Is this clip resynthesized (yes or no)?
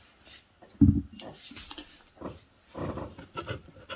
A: no